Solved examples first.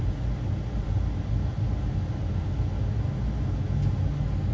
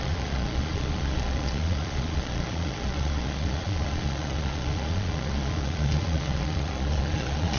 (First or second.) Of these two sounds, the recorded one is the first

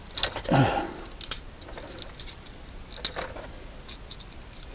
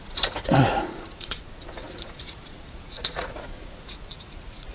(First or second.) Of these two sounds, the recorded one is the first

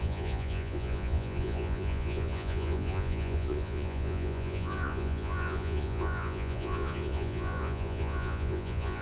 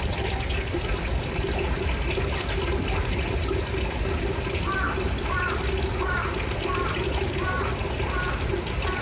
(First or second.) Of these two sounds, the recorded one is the second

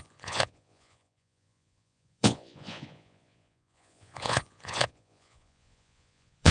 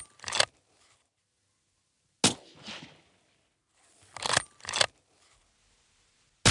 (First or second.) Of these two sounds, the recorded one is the second